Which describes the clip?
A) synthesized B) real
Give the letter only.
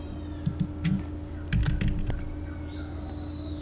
B